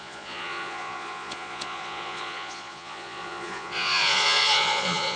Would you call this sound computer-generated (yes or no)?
yes